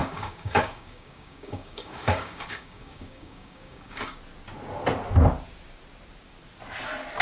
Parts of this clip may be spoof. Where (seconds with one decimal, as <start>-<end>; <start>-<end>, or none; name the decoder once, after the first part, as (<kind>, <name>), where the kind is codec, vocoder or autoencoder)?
0.0-4.2 (codec, DAC)